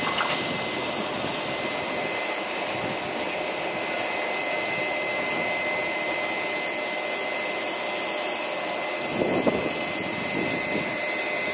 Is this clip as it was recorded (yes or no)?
yes